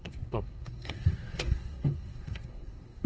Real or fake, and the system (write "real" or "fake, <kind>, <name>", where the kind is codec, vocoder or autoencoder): fake, codec, SNAC